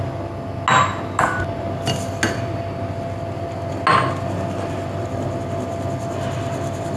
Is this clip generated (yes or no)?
no